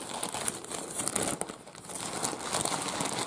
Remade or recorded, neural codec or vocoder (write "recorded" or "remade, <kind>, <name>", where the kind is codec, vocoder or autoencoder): recorded